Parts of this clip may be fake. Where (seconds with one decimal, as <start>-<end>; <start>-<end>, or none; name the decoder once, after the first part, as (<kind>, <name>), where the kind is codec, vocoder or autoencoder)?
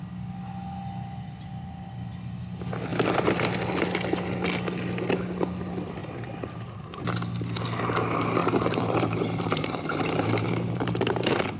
8.4-11.6 (vocoder, BigVGAN v2)